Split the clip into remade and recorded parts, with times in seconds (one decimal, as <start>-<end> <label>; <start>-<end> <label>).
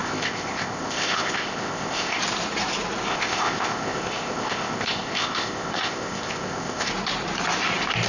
0.0-2.2 remade; 2.2-3.1 recorded; 3.1-6.9 remade; 6.9-8.1 recorded